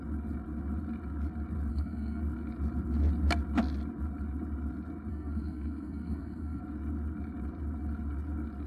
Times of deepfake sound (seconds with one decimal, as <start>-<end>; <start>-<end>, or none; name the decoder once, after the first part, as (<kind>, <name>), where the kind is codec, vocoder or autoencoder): 1.7-2.2 (codec, SNAC); 5.1-6.6